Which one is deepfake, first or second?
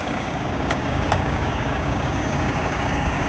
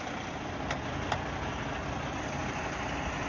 first